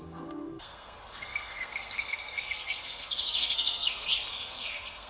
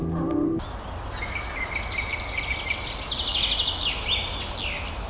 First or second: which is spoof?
first